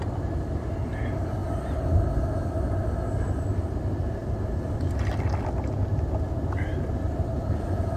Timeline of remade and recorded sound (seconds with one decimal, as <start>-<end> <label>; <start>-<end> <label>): 0.0-6.7 recorded; 6.7-7.4 remade; 7.4-8.0 recorded